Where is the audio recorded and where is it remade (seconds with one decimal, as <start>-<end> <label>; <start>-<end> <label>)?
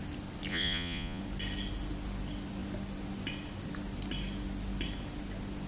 0.0-0.5 recorded; 0.5-1.2 remade; 1.2-5.7 recorded